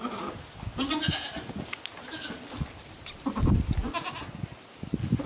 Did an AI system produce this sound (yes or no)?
no